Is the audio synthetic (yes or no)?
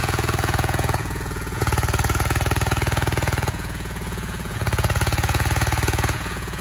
yes